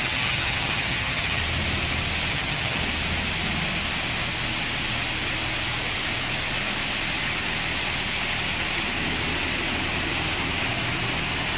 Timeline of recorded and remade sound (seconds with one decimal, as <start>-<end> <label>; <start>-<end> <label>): 0.0-1.4 remade; 1.4-2.3 recorded; 2.3-2.8 remade; 2.8-11.6 recorded

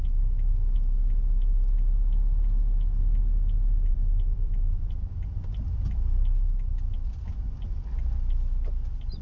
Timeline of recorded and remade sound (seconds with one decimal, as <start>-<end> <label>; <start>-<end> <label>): 0.0-3.9 recorded; 3.9-5.1 remade; 5.1-9.2 recorded

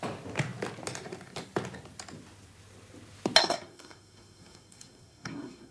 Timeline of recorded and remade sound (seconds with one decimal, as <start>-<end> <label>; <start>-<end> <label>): 0.0-3.4 recorded; 3.4-5.7 remade

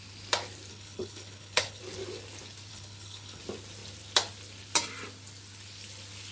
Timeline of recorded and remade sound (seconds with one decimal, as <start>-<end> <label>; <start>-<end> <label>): 0.0-0.7 recorded; 0.7-1.8 remade; 1.8-2.7 recorded; 2.7-3.4 remade; 3.4-6.3 recorded

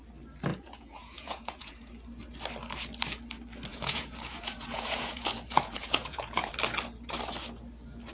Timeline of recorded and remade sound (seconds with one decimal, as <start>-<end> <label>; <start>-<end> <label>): 0.0-0.5 recorded; 0.5-1.9 remade; 1.9-3.7 recorded; 3.7-6.5 remade; 6.5-8.1 recorded

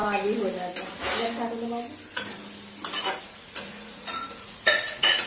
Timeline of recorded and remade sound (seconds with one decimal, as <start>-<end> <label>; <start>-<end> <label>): 0.0-3.2 recorded; 3.2-5.3 remade